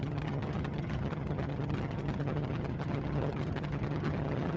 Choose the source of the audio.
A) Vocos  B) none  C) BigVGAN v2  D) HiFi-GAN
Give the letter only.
D